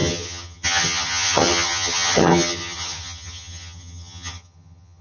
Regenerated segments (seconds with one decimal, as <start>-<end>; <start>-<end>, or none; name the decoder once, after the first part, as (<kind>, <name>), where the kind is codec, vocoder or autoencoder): 0.0-5.0 (vocoder, HiFi-GAN)